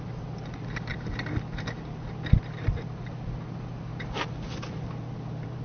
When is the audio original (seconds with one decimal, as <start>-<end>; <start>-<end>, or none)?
0.0-5.6